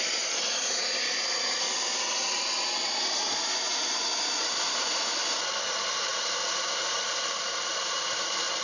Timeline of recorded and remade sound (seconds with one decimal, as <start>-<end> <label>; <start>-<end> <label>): 0.0-8.6 recorded